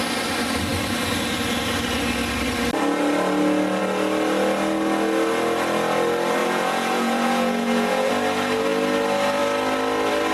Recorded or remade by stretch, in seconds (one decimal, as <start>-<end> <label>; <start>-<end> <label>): 0.0-6.4 recorded; 6.4-8.1 remade; 8.1-10.3 recorded